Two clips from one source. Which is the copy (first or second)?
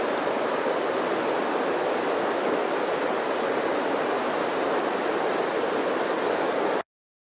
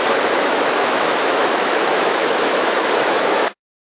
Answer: second